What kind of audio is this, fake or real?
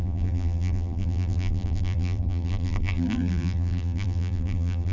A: fake